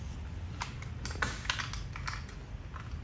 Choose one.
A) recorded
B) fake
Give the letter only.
A